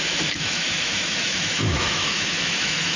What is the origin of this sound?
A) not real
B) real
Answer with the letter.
A